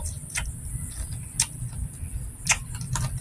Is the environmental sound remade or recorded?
recorded